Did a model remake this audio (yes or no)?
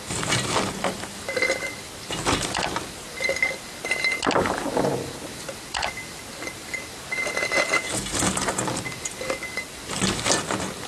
no